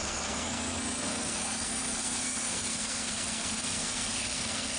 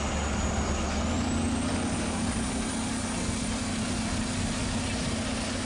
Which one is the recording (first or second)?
second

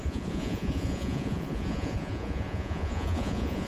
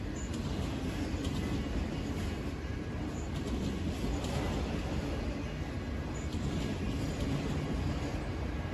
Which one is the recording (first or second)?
second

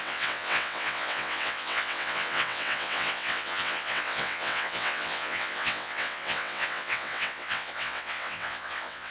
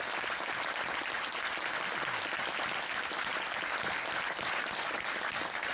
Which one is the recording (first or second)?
second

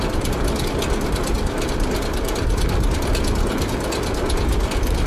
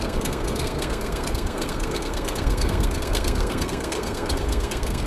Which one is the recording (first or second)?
first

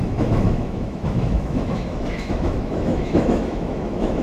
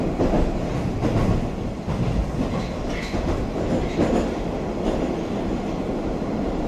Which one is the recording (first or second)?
second